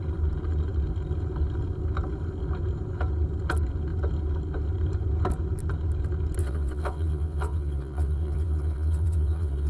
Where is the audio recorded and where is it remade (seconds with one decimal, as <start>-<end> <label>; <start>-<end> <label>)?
0.0-6.4 recorded; 6.4-9.7 remade